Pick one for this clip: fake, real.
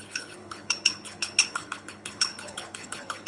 fake